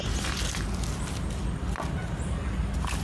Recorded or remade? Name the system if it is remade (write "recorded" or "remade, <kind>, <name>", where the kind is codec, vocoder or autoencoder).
recorded